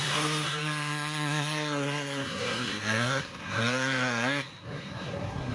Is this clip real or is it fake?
fake